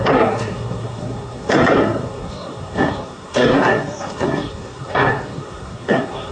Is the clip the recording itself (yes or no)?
no